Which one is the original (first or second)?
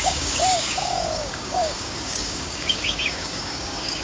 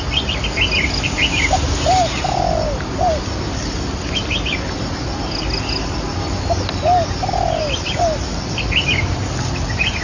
second